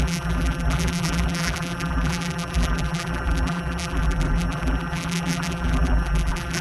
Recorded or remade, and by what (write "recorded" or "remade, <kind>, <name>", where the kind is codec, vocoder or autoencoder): remade, vocoder, BigVGAN v2